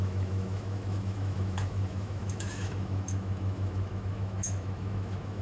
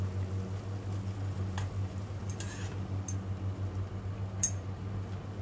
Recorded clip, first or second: second